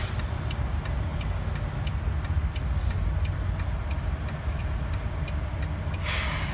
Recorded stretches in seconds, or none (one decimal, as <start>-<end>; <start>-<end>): 0.0-6.5